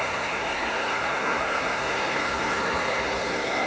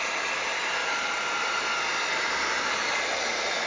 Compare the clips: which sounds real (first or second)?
second